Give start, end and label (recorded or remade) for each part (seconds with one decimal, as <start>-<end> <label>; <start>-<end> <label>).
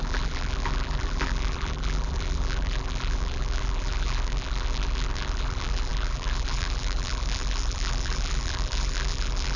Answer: 0.0-9.6 remade